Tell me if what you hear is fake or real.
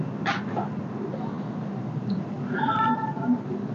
real